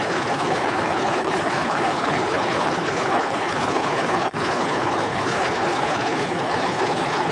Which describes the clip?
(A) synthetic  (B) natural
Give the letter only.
A